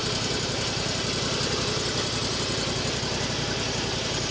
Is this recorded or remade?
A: recorded